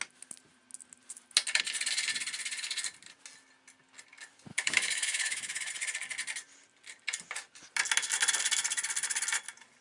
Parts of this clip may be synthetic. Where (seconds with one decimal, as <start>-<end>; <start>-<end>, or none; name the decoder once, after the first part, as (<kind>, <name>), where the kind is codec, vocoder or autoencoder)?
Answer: 4.5-5.7 (autoencoder, DAC-VAE)